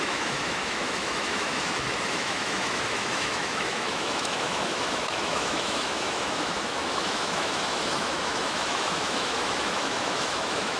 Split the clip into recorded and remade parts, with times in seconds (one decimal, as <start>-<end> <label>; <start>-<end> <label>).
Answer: 0.0-10.8 remade

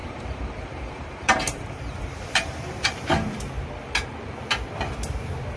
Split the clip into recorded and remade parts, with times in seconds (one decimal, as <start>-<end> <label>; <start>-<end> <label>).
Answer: 0.0-3.4 remade; 3.4-5.6 recorded

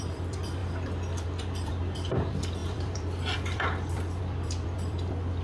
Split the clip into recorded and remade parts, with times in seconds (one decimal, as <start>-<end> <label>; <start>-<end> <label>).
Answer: 0.0-5.4 remade